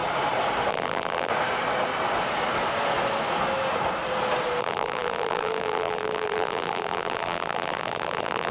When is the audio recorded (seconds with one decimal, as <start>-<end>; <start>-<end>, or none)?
0.0-0.7; 1.3-4.6